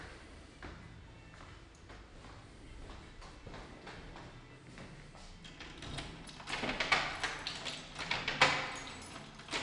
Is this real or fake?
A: real